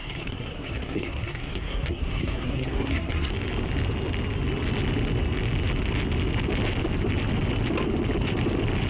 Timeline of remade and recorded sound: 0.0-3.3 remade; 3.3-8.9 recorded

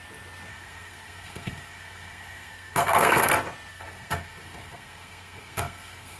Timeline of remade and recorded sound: 0.0-0.5 recorded; 0.5-3.3 remade; 3.3-3.7 recorded; 3.7-6.2 remade

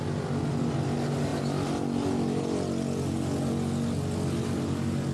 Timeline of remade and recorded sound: 0.0-5.1 recorded

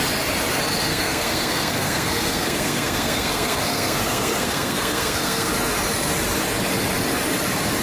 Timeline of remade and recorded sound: 0.0-0.9 recorded; 0.9-5.5 remade; 5.5-7.8 recorded

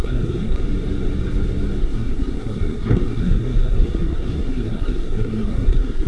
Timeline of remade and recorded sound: 0.0-0.6 remade; 0.6-1.8 recorded; 1.8-6.1 remade

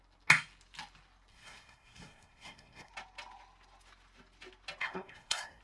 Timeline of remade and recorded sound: 0.0-1.3 recorded; 1.3-2.9 remade; 2.9-4.8 recorded; 4.8-5.6 remade

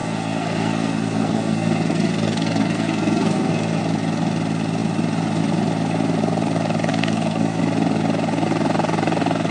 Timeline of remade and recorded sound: 0.0-3.8 remade; 3.8-6.9 recorded; 6.9-7.6 remade; 7.6-9.5 recorded

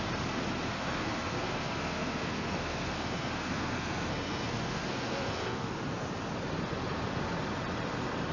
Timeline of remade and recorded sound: 0.0-0.7 recorded; 0.7-5.7 remade; 5.7-8.3 recorded